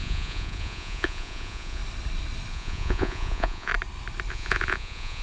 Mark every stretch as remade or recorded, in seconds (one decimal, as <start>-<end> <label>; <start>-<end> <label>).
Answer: 0.0-1.8 remade; 1.8-2.5 recorded; 2.5-3.7 remade; 3.7-4.3 recorded; 4.3-5.2 remade